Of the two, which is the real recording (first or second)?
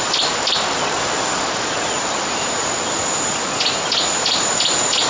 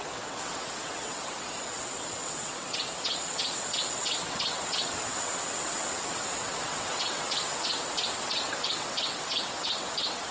first